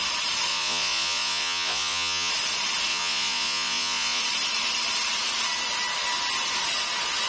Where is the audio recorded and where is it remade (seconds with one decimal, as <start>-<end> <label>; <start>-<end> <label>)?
0.0-0.5 recorded; 0.5-2.3 remade; 2.3-2.9 recorded; 2.9-4.2 remade; 4.2-7.3 recorded